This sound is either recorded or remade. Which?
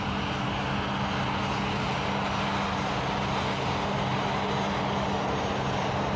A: recorded